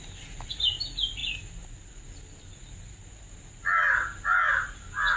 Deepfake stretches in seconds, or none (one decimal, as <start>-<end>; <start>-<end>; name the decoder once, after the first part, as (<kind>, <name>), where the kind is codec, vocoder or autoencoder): none